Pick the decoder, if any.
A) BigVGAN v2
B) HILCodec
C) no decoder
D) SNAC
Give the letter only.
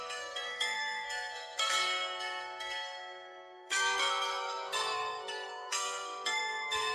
D